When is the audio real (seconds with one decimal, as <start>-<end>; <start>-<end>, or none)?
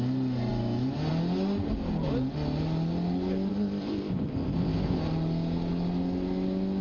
0.0-3.5; 5.0-6.8